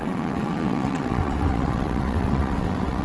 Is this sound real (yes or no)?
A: no